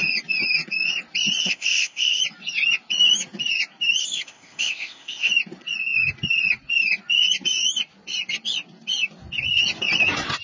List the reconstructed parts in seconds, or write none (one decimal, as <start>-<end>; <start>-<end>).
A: 1.4-2.2; 4.0-5.3